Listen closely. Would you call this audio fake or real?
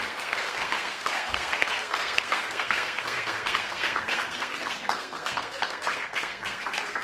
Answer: fake